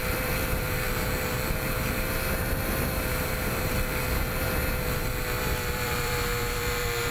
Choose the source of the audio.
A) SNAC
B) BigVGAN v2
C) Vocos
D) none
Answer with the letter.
B